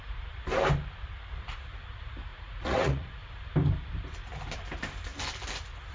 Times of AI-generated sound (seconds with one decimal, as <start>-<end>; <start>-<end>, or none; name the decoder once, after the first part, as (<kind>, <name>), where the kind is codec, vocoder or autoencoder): 2.3-3.2 (vocoder, Vocos)